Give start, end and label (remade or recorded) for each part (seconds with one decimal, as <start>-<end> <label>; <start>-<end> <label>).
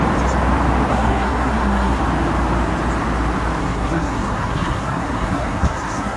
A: 0.0-0.9 recorded; 0.9-2.0 remade; 2.0-3.6 recorded; 3.6-6.2 remade